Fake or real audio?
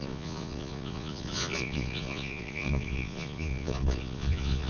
fake